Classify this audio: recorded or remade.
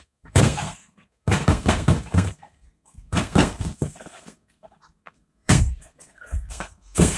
remade